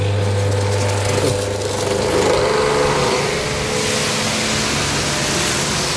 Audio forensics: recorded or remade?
recorded